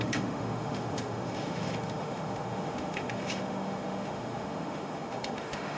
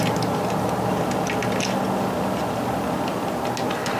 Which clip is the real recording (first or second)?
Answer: second